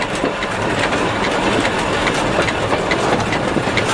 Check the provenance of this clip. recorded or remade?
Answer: recorded